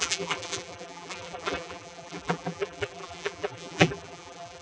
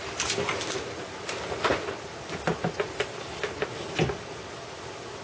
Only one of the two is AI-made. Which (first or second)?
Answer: first